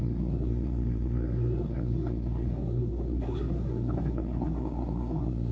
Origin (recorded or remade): remade